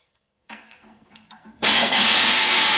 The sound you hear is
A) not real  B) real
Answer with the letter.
A